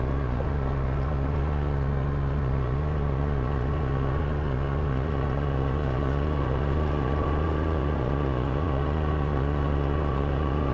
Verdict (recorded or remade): remade